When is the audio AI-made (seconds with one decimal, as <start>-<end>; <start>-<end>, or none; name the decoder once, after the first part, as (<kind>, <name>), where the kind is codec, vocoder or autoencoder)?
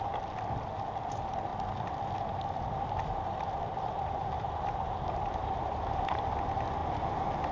1.5-6.0 (vocoder, BigVGAN v2)